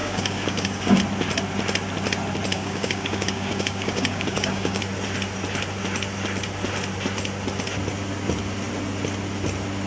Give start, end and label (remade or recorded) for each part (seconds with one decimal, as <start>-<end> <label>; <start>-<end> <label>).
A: 0.0-1.0 remade; 1.0-2.5 recorded; 2.5-4.8 remade; 4.8-9.9 recorded